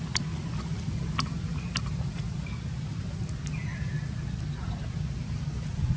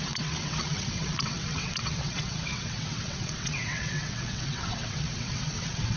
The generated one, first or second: second